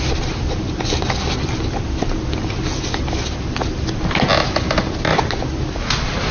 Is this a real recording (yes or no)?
yes